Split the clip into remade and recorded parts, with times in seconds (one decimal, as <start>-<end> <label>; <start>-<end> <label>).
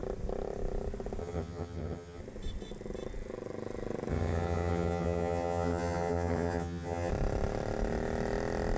0.0-1.2 recorded; 1.2-2.2 remade; 2.2-4.1 recorded; 4.1-7.1 remade; 7.1-8.8 recorded